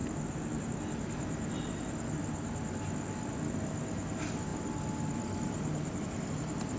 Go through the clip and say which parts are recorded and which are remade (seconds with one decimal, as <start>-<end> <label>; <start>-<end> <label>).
0.0-6.8 recorded